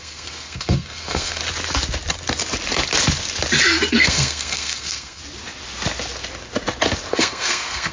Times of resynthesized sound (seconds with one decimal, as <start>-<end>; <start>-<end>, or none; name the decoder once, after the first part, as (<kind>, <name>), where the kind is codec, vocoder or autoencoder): 0.0-1.4 (codec, SNAC); 3.9-5.2; 7.1-7.9